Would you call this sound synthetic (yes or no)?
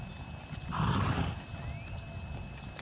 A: no